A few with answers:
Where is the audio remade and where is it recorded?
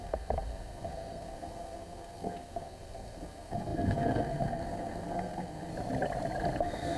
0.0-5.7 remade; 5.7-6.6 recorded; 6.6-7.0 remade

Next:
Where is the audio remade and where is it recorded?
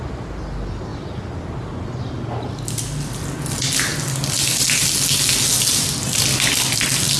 0.0-7.2 recorded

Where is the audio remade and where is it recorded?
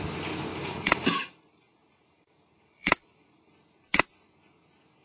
0.0-0.5 recorded; 0.5-3.5 remade; 3.5-5.0 recorded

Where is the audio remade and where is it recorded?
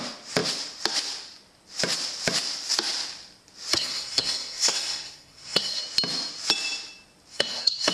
0.0-3.7 recorded; 3.7-5.8 remade; 5.8-7.3 recorded; 7.3-7.9 remade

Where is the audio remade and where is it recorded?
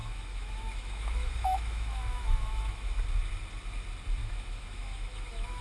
0.0-2.9 remade; 2.9-4.2 recorded; 4.2-5.6 remade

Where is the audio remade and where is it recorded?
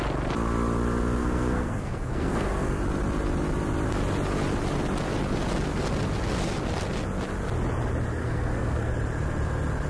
0.0-1.2 recorded; 1.2-2.8 remade; 2.8-8.2 recorded; 8.2-8.9 remade; 8.9-9.9 recorded